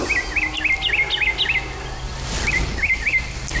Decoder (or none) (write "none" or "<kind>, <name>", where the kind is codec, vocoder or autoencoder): none